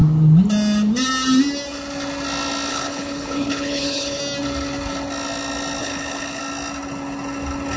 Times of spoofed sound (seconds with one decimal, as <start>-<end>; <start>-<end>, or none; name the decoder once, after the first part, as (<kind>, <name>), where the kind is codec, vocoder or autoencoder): 2.7-4.2 (codec, HILCodec); 5.8-6.4